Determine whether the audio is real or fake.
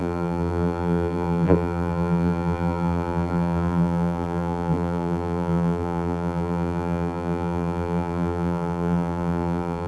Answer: fake